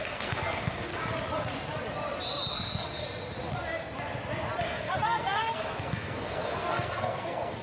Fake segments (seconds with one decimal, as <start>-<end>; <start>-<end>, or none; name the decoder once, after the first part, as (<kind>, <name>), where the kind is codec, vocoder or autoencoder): 0.0-0.9 (codec, SNAC); 2.5-3.0; 4.6-7.6